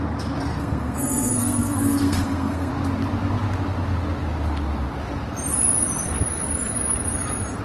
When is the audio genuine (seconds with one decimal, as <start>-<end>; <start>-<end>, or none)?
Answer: 0.0-0.6; 2.7-7.6